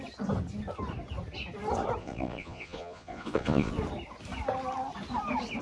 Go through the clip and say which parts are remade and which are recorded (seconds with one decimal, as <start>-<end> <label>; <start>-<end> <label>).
0.0-2.0 recorded; 2.0-3.7 remade; 3.7-5.6 recorded